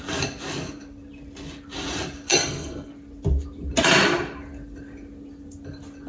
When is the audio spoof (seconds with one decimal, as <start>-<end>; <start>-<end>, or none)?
2.3-2.9